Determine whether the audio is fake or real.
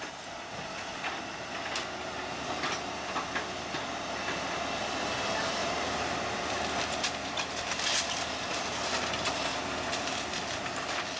real